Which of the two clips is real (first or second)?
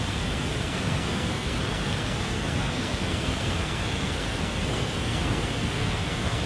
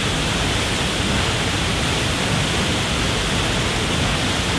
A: second